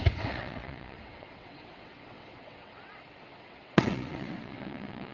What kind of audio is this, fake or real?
fake